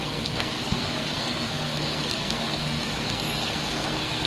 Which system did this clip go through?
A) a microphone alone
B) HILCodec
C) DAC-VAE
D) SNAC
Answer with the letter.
D